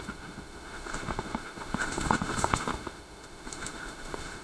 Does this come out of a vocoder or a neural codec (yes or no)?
yes